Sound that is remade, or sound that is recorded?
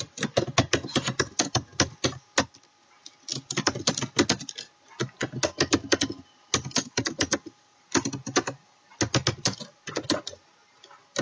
recorded